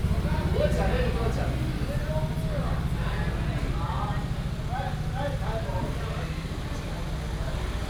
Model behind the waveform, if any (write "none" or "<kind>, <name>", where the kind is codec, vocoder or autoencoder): none